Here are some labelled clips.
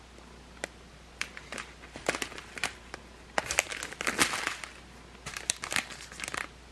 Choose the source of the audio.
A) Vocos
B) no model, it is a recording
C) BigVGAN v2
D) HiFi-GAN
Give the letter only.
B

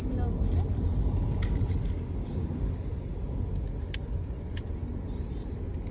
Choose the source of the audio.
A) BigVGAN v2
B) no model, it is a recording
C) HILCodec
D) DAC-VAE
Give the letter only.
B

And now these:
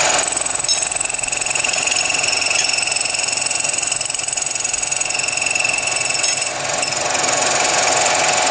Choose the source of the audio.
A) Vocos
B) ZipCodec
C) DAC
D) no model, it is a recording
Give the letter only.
D